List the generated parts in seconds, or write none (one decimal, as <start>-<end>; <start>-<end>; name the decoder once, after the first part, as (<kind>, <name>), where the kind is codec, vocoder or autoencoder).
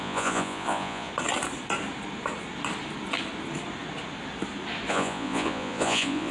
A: 0.0-1.1 (vocoder, Vocos); 4.9-6.3